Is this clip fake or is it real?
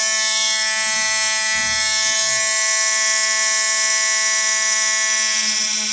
real